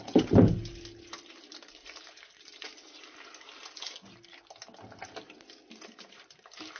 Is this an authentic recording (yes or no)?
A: yes